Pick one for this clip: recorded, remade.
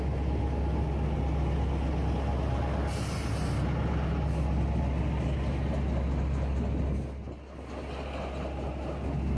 recorded